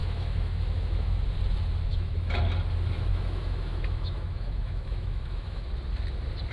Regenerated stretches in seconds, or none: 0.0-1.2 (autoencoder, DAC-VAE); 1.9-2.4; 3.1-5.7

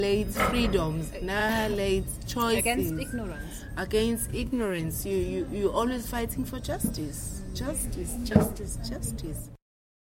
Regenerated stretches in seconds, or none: 4.3-4.8 (autoencoder, DAC-VAE); 7.8-8.6

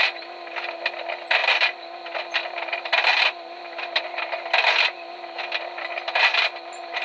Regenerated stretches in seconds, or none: none